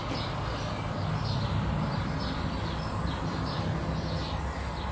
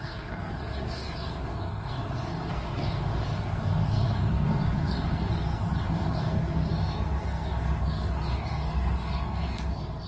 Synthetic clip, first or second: second